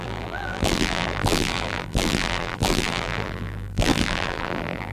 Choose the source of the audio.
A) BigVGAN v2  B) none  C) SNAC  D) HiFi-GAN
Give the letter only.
A